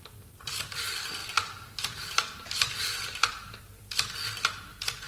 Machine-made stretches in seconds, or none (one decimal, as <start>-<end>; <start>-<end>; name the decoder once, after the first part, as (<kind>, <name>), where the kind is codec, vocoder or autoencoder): 1.2-3.6 (vocoder, BigVGAN v2)